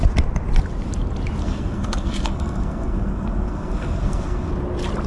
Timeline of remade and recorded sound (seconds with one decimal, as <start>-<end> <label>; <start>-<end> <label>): 0.0-1.4 recorded; 1.4-4.5 remade; 4.5-5.1 recorded